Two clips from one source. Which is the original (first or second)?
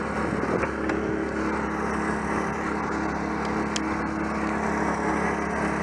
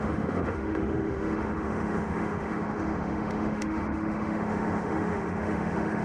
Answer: first